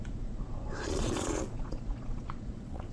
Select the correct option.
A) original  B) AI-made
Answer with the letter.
B